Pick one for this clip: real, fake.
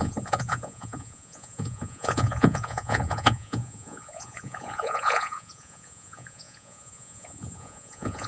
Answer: fake